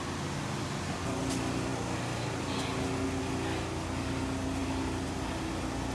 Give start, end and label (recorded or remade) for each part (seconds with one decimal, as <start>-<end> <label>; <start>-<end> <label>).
0.0-5.9 recorded